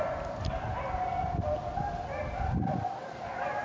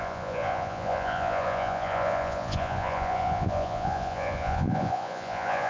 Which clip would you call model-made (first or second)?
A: second